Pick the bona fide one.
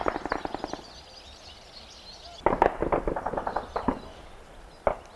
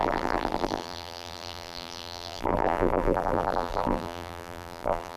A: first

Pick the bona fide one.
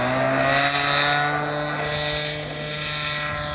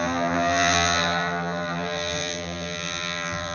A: first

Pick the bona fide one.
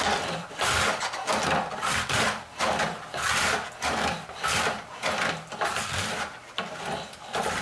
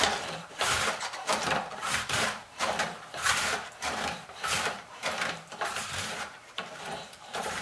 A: first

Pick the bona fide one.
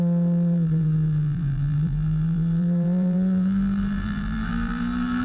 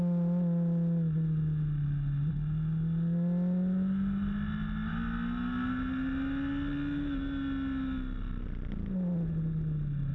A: second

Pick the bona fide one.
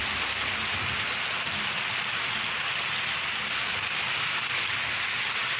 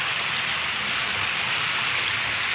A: first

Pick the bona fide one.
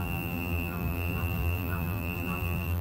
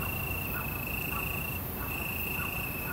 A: second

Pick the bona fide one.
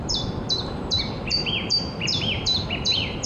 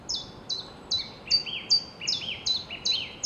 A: second